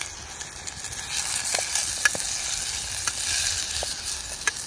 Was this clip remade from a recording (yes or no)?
no